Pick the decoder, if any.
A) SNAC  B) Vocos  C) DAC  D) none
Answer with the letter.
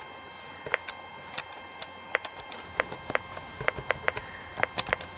D